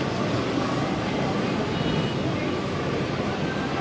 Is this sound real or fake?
real